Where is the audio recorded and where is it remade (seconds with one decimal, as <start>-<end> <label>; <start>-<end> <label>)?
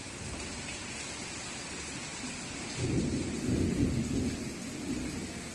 0.0-0.9 remade; 0.9-5.5 recorded